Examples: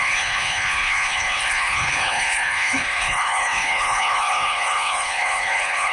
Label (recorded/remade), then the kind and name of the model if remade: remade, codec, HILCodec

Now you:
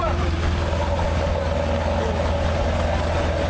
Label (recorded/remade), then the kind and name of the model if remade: recorded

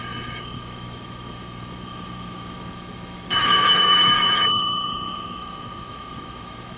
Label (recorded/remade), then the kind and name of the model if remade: remade, autoencoder, DAC-VAE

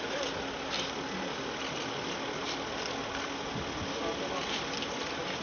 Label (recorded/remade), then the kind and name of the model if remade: recorded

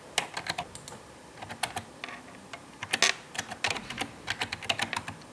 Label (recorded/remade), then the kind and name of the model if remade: recorded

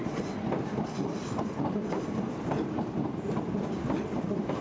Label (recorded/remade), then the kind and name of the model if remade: recorded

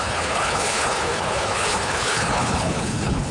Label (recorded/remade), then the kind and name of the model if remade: remade, codec, HILCodec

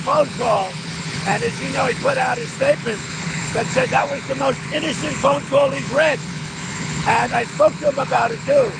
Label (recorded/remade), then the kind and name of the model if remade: remade, codec, HILCodec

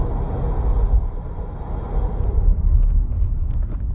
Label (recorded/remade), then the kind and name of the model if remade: recorded